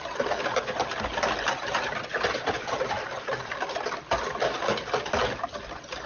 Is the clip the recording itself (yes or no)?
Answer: yes